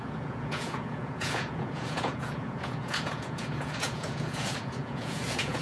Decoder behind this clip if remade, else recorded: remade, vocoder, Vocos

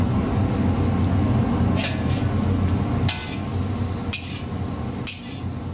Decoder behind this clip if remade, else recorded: recorded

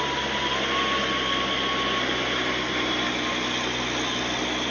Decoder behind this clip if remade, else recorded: recorded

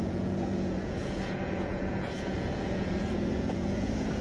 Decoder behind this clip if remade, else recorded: remade, vocoder, Vocos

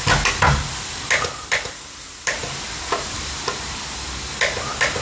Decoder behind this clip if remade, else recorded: recorded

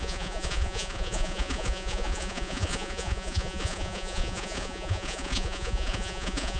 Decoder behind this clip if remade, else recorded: remade, vocoder, Vocos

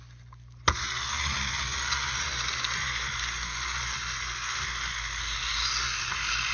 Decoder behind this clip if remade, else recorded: recorded